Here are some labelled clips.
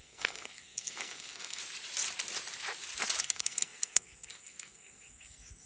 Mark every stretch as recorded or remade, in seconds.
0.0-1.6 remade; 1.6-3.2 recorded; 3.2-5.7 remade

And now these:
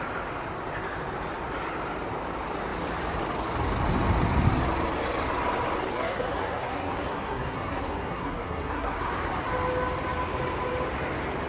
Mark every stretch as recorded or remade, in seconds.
0.0-5.9 recorded; 5.9-9.1 remade; 9.1-11.5 recorded

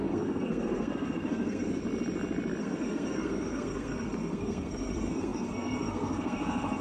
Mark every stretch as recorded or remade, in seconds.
0.0-1.8 remade; 1.8-2.6 recorded; 2.6-6.8 remade

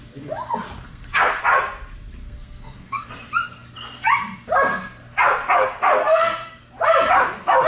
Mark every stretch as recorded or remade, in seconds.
0.0-0.8 recorded; 0.8-1.4 remade; 1.4-2.2 recorded; 2.2-3.1 remade; 3.1-6.0 recorded; 6.0-6.6 remade; 6.6-7.7 recorded

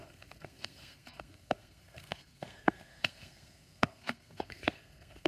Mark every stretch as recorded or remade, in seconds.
0.0-5.3 remade

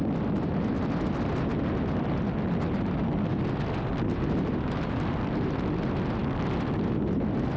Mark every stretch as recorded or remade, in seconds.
0.0-7.6 recorded